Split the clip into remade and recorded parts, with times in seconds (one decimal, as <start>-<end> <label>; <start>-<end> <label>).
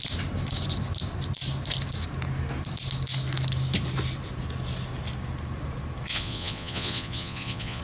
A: 0.0-6.1 recorded; 6.1-7.8 remade